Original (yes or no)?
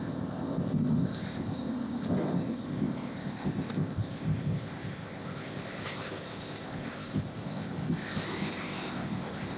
no